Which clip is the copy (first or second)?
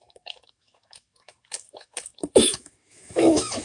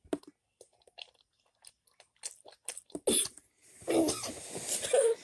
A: first